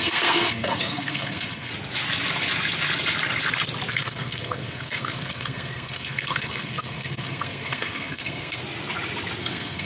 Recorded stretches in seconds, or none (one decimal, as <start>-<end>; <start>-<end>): 1.7-3.9; 8.6-9.4